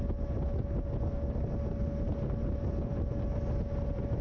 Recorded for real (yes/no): yes